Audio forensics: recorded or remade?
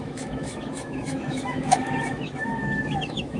remade